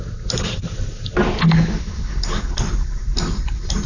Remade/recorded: recorded